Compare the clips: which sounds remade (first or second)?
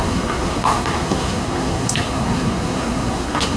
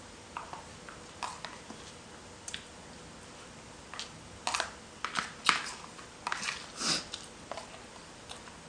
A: first